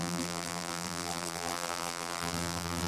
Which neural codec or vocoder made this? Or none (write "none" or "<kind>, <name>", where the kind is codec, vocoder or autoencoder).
vocoder, BigVGAN v2